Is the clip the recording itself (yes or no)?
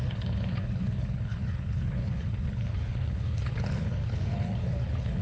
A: no